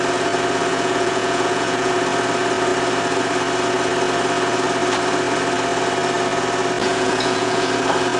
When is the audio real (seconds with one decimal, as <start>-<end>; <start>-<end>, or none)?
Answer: 0.0-0.7; 1.9-6.8; 7.7-8.2